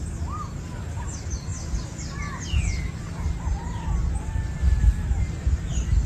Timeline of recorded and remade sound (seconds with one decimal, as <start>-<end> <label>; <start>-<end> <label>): 0.0-6.1 recorded